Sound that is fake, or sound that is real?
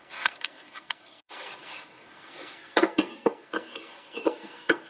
fake